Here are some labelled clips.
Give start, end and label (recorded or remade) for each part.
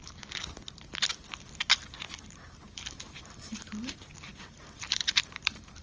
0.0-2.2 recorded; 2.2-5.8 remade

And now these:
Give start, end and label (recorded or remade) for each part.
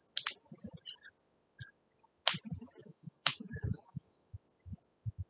0.0-2.8 recorded; 2.8-4.3 remade; 4.3-5.3 recorded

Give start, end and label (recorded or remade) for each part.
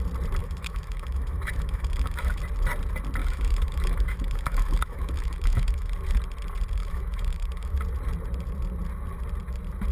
0.0-0.4 recorded; 0.4-2.4 remade; 2.4-3.2 recorded; 3.2-5.9 remade; 5.9-6.8 recorded; 6.8-7.8 remade; 7.8-9.9 recorded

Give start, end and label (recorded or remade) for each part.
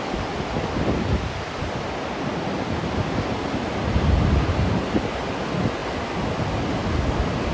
0.0-7.5 recorded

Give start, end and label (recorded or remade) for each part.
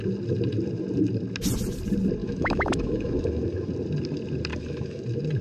0.0-2.2 recorded; 2.2-3.7 remade; 3.7-4.5 recorded; 4.5-5.0 remade; 5.0-5.4 recorded